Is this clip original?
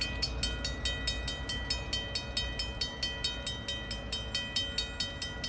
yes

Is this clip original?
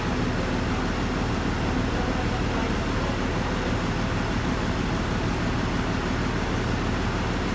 yes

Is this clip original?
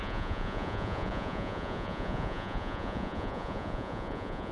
no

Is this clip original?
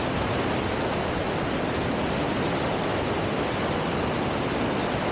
yes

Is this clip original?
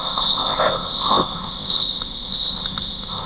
no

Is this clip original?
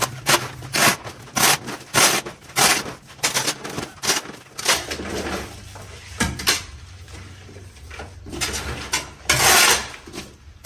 yes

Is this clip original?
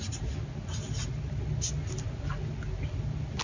yes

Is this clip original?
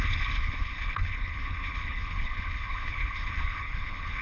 no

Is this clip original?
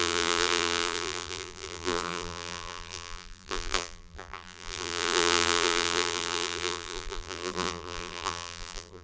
no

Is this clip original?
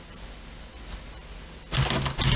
yes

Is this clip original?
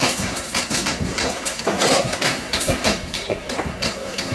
no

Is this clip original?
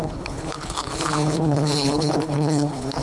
no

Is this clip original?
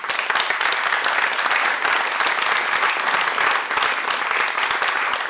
yes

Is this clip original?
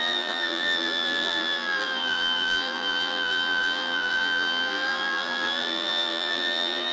no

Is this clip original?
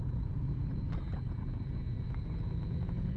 no